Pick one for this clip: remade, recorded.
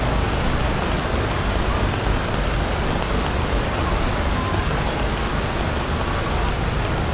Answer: recorded